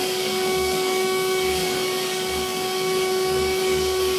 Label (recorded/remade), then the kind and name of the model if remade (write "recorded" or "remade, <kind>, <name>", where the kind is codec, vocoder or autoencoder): remade, codec, DAC